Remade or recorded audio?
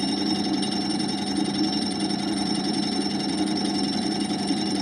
remade